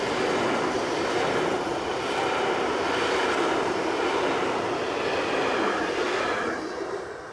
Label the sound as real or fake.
real